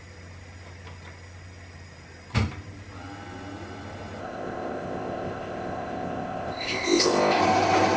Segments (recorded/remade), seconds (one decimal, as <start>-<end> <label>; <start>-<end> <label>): 0.0-4.2 recorded; 4.2-7.4 remade; 7.4-8.0 recorded